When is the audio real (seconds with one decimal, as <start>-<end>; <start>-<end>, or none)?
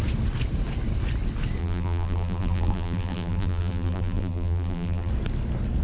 0.0-1.6; 5.1-5.8